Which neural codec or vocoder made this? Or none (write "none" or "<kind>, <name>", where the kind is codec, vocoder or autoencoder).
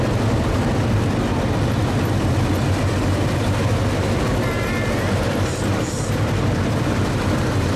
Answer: vocoder, BigVGAN v2